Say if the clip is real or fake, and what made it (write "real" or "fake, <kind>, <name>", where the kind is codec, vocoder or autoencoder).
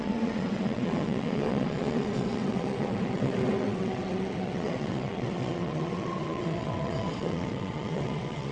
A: fake, vocoder, WaveNeXt